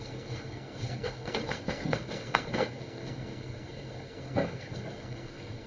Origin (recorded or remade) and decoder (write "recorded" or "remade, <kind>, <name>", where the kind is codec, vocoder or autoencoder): remade, codec, SNAC